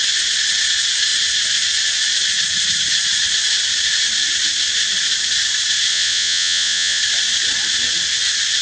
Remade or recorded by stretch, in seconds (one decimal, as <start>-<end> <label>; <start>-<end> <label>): 0.0-5.9 recorded; 5.9-7.0 remade; 7.0-8.6 recorded